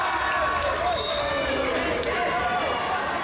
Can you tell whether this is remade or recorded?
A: recorded